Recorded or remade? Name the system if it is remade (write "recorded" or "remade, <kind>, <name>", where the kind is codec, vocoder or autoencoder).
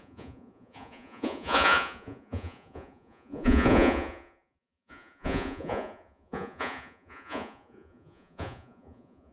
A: remade, vocoder, Vocos